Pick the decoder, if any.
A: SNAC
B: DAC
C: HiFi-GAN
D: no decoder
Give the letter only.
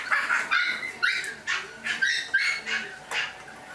D